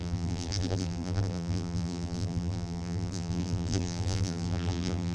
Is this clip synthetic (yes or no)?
yes